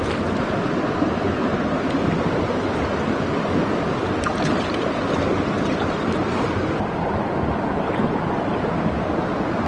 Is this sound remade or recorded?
recorded